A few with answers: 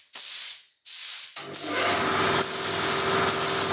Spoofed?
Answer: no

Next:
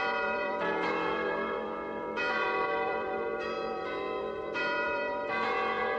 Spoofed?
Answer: yes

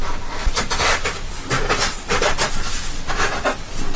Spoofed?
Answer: no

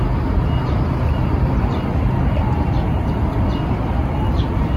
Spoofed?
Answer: no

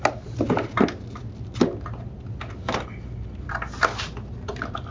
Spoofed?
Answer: no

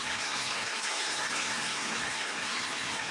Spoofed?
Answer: yes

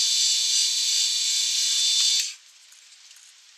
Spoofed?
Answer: no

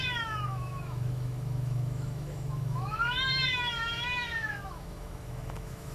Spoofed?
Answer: yes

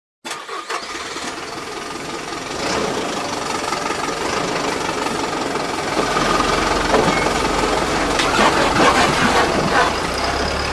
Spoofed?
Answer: no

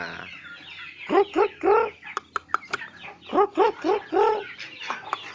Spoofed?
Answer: no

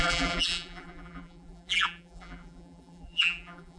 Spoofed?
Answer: yes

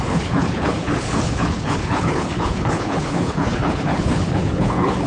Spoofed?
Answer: yes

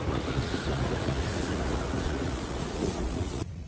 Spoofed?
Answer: yes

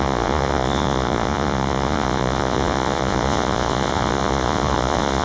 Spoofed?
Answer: yes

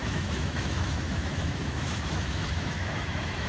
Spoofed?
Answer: yes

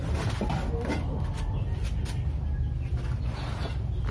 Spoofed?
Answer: no